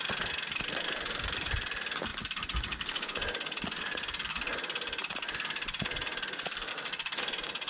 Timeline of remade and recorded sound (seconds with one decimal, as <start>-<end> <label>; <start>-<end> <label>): 0.0-7.7 recorded